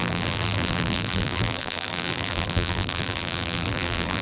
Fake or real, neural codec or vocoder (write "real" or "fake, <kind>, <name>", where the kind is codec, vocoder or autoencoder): fake, vocoder, BigVGAN v2